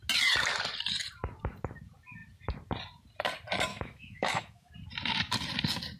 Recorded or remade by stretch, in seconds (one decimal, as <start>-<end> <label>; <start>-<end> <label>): 0.0-3.7 recorded; 3.7-4.7 remade; 4.7-6.0 recorded

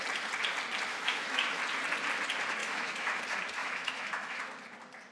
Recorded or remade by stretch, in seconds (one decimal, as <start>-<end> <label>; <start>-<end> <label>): 0.0-0.9 recorded; 0.9-1.6 remade; 1.6-2.6 recorded; 2.6-3.2 remade; 3.2-3.6 recorded; 3.6-4.4 remade; 4.4-5.1 recorded

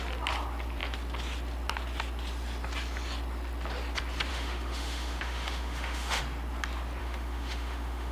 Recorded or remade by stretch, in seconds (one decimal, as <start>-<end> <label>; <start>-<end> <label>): 0.0-4.3 recorded; 4.3-6.2 remade; 6.2-7.0 recorded; 7.0-8.1 remade

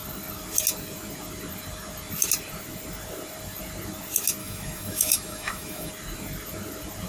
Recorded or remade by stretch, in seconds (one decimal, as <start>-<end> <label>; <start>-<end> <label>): 0.0-4.4 recorded; 4.4-5.9 remade; 5.9-7.1 recorded

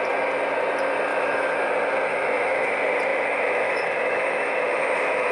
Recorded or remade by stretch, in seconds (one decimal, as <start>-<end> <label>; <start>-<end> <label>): 0.0-1.1 recorded; 1.1-1.7 remade; 1.7-2.1 recorded; 2.1-2.7 remade; 2.7-3.1 recorded; 3.1-5.3 remade

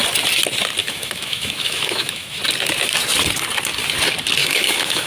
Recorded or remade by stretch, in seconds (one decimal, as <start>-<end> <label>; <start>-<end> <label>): 0.0-0.8 recorded; 0.8-2.4 remade; 2.4-4.4 recorded; 4.4-5.1 remade

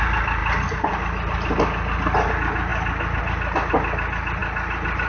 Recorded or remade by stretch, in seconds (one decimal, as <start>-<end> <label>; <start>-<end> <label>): 0.0-5.1 recorded